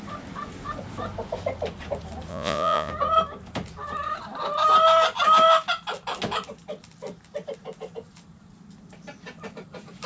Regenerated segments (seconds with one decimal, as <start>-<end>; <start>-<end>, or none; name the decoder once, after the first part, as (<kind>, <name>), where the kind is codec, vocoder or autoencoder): 2.3-2.9 (vocoder, Vocos)